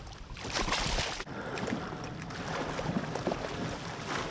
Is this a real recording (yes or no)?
yes